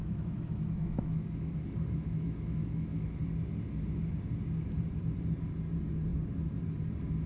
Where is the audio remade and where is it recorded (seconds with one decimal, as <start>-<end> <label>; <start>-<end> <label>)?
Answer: 0.0-3.2 remade; 3.2-7.3 recorded